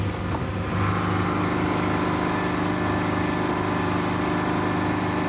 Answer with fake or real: real